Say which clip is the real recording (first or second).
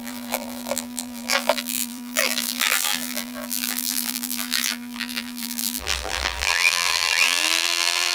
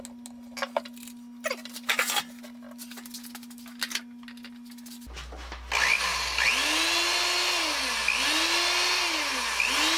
second